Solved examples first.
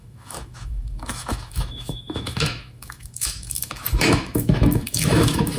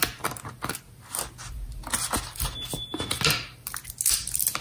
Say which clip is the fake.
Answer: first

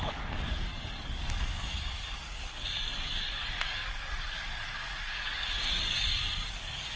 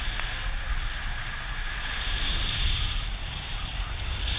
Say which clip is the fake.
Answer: first